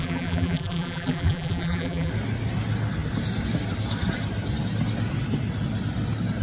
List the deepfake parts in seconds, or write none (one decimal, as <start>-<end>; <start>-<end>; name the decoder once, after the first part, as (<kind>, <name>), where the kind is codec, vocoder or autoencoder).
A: 0.0-2.1 (vocoder, BigVGAN v2)

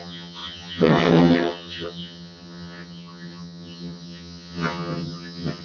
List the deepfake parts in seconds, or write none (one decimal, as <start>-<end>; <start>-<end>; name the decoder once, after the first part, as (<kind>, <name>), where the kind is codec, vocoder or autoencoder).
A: 0.0-5.6 (vocoder, HiFi-GAN)

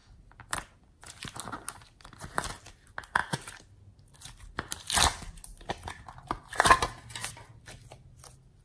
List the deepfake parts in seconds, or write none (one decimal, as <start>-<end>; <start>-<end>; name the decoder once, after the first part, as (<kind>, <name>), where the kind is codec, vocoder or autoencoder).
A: none

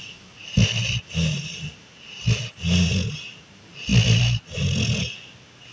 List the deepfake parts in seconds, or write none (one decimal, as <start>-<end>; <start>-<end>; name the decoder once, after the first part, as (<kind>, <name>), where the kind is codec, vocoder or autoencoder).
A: none